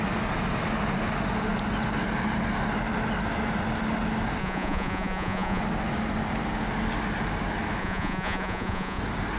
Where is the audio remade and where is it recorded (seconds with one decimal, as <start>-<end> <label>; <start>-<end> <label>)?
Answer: 0.0-4.4 recorded; 4.4-5.6 remade; 5.6-7.8 recorded; 7.8-9.0 remade; 9.0-9.4 recorded